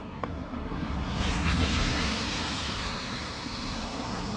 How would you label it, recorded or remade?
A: remade